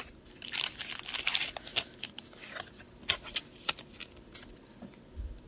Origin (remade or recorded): recorded